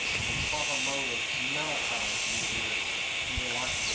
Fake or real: real